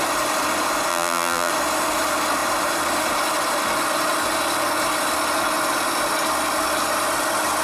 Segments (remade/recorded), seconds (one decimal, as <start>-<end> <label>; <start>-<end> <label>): 0.0-0.9 recorded; 0.9-1.5 remade; 1.5-7.6 recorded